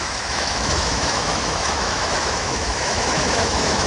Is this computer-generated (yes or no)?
yes